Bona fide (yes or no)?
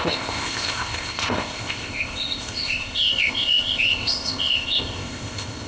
no